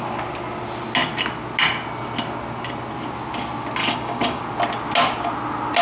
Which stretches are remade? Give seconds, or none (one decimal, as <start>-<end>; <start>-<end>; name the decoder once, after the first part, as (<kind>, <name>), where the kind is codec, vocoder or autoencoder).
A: 3.8-4.4 (codec, DAC)